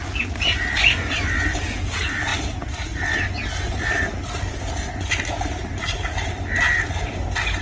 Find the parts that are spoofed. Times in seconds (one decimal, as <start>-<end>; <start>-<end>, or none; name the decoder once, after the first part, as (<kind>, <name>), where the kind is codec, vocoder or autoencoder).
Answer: none